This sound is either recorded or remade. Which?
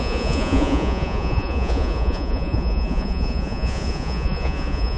remade